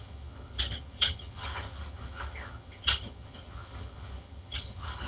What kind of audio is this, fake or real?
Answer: fake